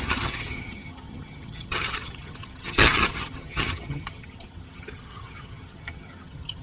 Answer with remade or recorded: remade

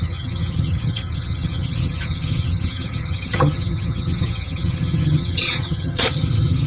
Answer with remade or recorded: remade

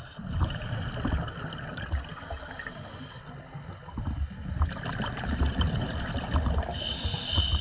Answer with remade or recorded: recorded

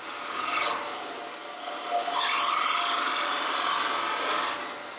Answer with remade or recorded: recorded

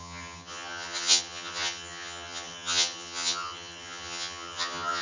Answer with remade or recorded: remade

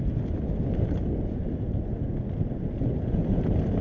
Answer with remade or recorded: recorded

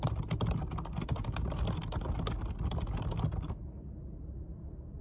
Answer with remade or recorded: recorded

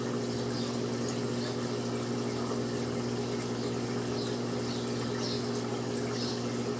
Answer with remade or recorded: recorded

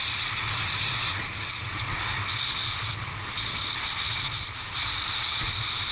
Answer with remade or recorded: recorded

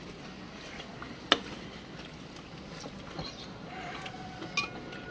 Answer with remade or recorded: recorded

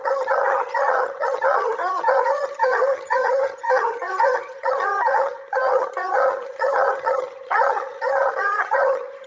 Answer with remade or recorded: remade